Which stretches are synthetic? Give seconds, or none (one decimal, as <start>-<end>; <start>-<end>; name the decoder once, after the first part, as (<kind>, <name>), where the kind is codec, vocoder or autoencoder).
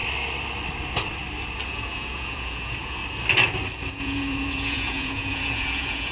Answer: 1.7-3.0 (vocoder, Vocos); 3.9-6.1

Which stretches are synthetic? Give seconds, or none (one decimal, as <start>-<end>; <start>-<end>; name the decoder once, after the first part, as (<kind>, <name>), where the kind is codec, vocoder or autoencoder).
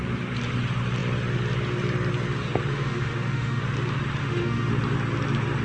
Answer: 2.7-3.6 (autoencoder, DAC-VAE); 4.2-4.7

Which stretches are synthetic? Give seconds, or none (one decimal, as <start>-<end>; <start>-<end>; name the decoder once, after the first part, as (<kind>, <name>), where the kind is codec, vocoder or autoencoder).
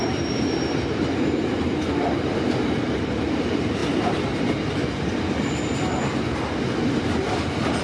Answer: 0.0-3.8 (vocoder, BigVGAN v2); 6.9-7.8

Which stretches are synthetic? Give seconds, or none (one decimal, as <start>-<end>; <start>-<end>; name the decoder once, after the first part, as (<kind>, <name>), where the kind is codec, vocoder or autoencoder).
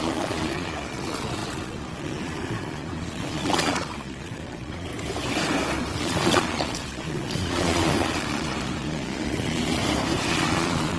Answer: 0.0-4.9 (vocoder, Vocos); 6.0-9.8; 10.3-11.0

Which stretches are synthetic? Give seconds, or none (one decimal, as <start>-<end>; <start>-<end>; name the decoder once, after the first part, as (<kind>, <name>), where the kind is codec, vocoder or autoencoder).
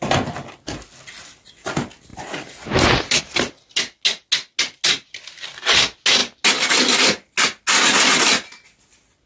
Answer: none